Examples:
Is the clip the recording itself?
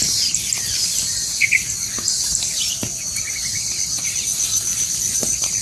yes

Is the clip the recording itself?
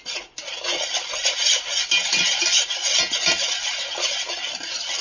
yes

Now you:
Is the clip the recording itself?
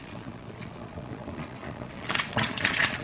no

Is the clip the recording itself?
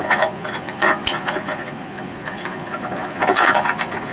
no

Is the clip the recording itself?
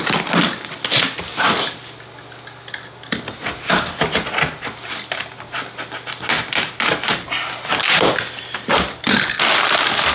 yes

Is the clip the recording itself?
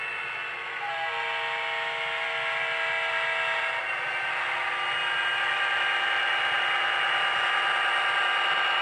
yes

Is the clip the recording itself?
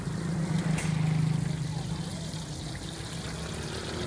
yes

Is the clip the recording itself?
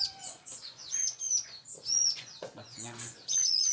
no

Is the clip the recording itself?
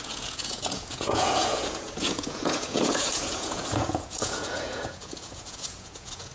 no